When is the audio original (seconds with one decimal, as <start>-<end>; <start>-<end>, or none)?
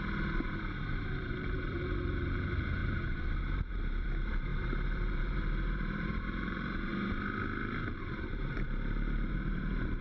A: 6.9-7.9